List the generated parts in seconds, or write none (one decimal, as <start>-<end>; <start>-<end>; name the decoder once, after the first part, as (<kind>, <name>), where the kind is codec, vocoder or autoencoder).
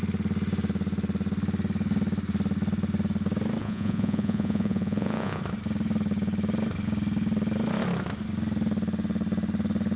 3.6-5.4 (vocoder, Vocos)